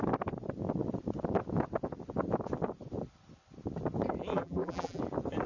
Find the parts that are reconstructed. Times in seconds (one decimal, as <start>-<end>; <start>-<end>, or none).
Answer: 4.3-5.0